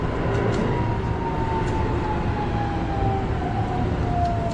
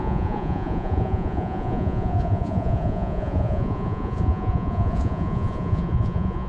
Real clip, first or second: first